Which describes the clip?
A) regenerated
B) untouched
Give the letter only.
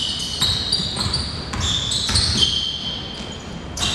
B